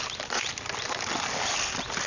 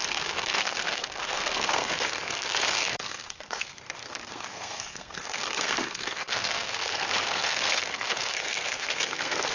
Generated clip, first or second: second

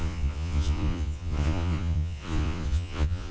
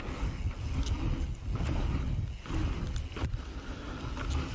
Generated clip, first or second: first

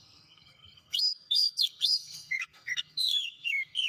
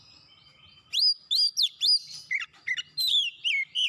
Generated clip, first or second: first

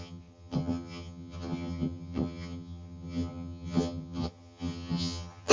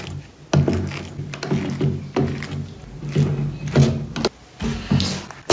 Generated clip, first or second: first